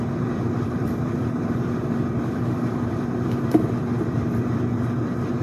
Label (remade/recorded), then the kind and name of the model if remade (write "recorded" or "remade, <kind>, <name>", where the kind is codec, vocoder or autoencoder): remade, vocoder, BigVGAN v2